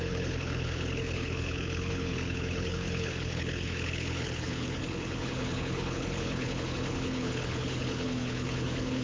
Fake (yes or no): yes